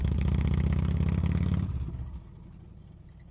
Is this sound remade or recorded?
recorded